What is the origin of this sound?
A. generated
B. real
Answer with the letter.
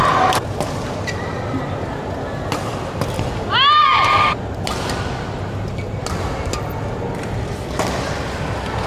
B